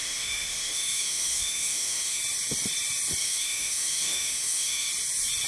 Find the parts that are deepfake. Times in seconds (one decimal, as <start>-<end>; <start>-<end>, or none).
0.0-2.2; 3.2-4.9